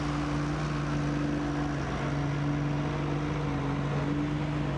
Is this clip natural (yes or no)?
yes